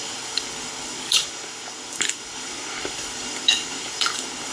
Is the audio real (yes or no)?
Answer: no